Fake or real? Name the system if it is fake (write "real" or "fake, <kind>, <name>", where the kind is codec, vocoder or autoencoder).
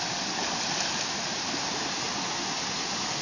real